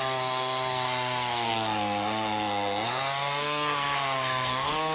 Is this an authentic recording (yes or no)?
no